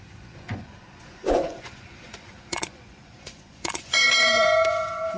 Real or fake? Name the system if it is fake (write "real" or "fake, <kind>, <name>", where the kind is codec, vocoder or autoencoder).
fake, vocoder, Vocos